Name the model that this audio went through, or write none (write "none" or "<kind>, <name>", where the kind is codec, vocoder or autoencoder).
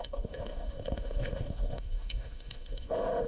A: autoencoder, DAC-VAE